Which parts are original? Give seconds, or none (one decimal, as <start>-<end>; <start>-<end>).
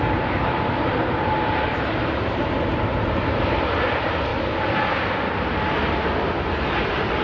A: 4.3-6.4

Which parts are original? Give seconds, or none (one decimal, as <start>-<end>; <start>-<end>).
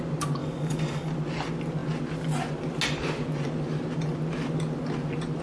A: 0.0-0.4; 1.1-5.4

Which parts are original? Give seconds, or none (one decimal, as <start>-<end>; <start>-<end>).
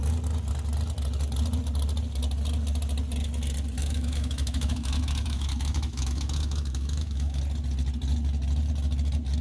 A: 0.0-3.8; 7.4-9.4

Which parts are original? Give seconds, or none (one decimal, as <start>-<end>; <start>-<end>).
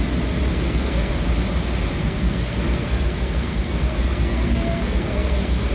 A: 0.0-0.5; 1.1-2.0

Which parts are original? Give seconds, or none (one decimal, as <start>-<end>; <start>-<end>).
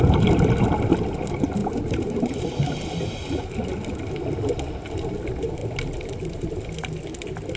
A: 0.0-1.6; 3.6-5.6; 6.5-7.6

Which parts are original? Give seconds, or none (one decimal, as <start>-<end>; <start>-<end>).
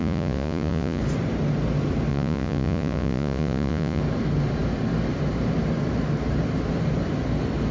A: 1.0-2.1; 4.0-7.7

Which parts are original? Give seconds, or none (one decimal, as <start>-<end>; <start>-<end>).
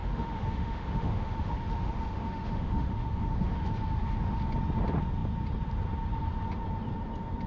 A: 4.4-7.5